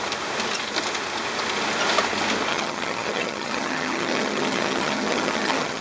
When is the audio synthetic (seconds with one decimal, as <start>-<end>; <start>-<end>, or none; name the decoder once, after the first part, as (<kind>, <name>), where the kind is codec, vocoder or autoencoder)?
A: 2.5-5.8 (vocoder, HiFi-GAN)